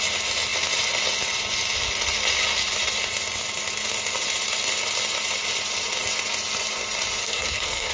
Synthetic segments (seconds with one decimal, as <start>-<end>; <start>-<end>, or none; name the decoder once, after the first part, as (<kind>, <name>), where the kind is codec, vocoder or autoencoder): 7.2-7.9 (codec, SNAC)